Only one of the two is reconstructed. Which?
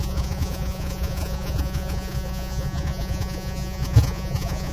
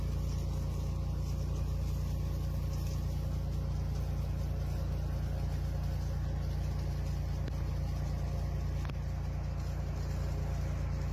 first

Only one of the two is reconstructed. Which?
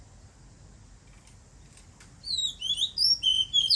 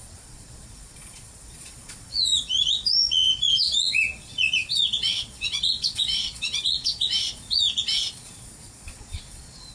second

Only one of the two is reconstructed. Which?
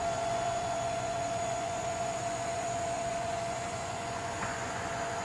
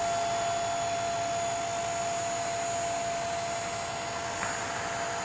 first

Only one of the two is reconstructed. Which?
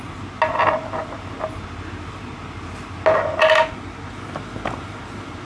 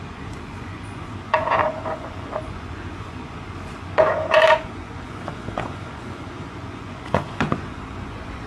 second